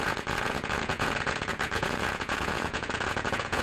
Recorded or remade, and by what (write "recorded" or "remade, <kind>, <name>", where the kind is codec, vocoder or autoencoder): remade, vocoder, Vocos